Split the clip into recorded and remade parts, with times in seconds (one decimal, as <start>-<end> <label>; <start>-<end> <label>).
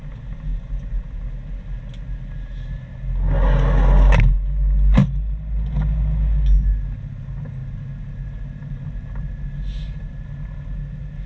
0.0-0.5 recorded; 0.5-1.2 remade; 1.2-11.3 recorded